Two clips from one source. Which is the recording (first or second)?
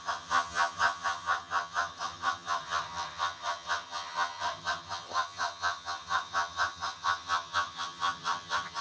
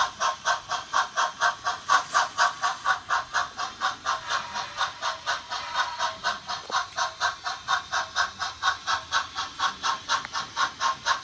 second